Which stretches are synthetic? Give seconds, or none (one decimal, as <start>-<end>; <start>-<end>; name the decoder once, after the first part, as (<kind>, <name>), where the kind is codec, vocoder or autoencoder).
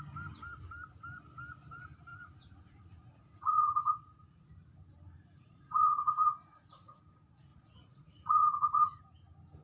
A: 2.1-4.7 (vocoder, Vocos); 5.4-7.0; 7.5-9.0